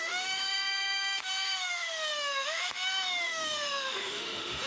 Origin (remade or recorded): remade